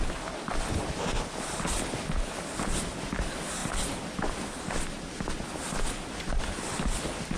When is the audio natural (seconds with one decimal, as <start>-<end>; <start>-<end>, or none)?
0.0-7.4